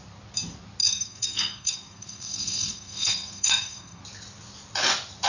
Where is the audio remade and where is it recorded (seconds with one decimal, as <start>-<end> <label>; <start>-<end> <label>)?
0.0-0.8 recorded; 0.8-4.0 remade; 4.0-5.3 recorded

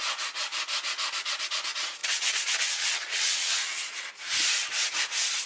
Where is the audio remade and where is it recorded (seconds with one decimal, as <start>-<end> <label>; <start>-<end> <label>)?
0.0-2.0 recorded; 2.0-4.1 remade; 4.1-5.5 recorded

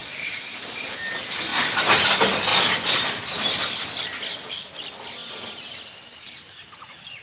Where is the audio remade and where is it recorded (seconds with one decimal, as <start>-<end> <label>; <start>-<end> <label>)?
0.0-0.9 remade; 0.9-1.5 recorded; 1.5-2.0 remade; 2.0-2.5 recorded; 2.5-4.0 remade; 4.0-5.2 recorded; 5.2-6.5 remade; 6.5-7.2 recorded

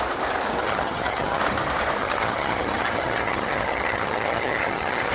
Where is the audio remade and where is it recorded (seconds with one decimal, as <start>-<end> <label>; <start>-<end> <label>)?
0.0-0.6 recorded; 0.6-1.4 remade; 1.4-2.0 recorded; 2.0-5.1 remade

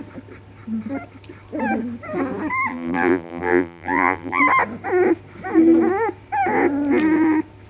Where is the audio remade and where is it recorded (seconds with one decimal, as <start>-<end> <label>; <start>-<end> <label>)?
0.0-2.7 recorded; 2.7-4.4 remade; 4.4-7.7 recorded

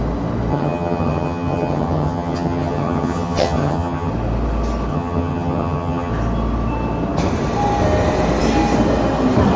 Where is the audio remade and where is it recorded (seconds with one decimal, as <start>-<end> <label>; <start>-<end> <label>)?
0.0-0.5 recorded; 0.5-4.1 remade; 4.1-4.9 recorded; 4.9-6.1 remade; 6.1-9.6 recorded

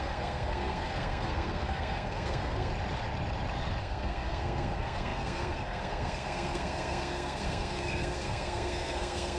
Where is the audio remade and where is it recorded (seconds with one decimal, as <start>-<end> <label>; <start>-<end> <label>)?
0.0-2.7 remade; 2.7-3.8 recorded; 3.8-9.4 remade